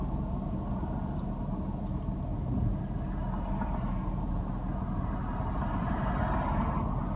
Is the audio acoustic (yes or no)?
yes